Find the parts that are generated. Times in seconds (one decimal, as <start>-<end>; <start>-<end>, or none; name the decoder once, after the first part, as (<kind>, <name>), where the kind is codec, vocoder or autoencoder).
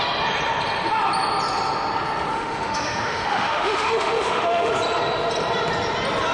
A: 2.3-4.7 (autoencoder, DAC-VAE)